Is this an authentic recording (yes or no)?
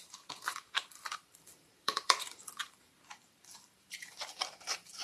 no